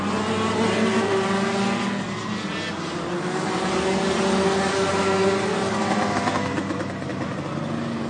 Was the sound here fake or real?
real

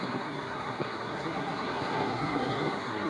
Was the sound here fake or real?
fake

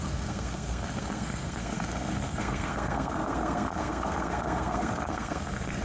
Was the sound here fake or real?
fake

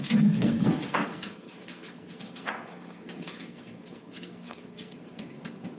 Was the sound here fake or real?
fake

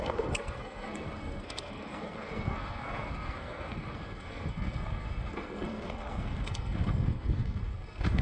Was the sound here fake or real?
fake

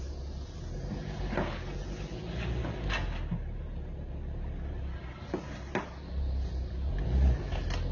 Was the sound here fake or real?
real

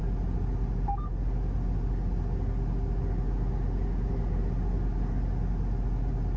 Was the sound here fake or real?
real